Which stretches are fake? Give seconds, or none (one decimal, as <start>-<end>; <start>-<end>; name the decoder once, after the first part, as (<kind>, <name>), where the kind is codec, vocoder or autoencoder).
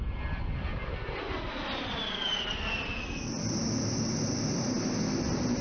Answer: none